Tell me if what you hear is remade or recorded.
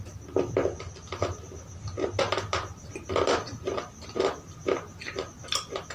recorded